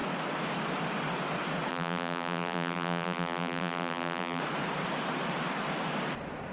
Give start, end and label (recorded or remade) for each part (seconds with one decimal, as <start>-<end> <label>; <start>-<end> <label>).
0.0-1.7 recorded; 1.7-4.4 remade; 4.4-6.5 recorded